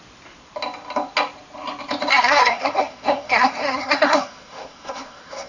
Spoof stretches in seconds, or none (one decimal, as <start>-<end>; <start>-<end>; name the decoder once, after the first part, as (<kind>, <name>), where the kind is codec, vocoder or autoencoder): 2.1-5.5 (codec, SNAC)